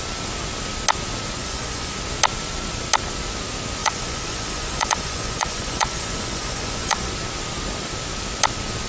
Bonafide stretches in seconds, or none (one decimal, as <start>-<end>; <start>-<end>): 0.0-1.4; 1.9-3.8; 7.1-8.9